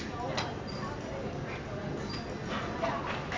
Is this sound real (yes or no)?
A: yes